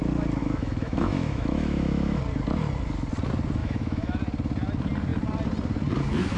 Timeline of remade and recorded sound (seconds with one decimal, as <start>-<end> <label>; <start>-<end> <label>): 0.0-0.4 recorded; 0.4-2.2 remade; 2.2-3.6 recorded; 3.6-4.2 remade; 4.2-6.4 recorded